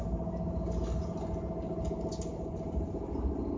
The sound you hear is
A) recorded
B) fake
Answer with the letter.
A